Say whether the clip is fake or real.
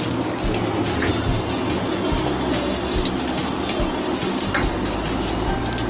real